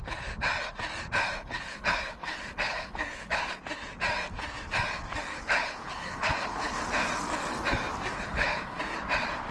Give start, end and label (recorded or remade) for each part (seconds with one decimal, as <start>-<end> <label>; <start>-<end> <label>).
0.0-1.4 recorded; 1.4-3.6 remade; 3.6-5.3 recorded; 5.3-6.8 remade; 6.8-8.1 recorded; 8.1-8.8 remade; 8.8-9.5 recorded